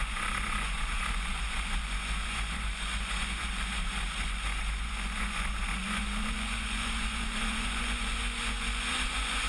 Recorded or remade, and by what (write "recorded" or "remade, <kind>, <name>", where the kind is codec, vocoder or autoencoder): remade, vocoder, Vocos